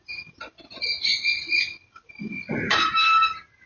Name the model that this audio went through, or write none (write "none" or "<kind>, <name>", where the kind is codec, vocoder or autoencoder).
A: none